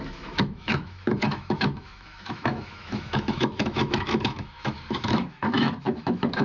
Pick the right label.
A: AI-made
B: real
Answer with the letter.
A